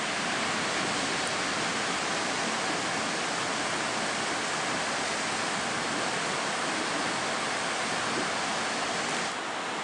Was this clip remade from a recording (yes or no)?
no